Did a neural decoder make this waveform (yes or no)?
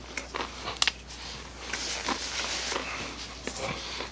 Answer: no